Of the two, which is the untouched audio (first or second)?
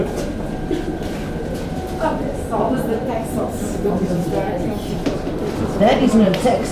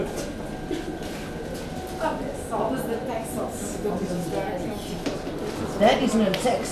second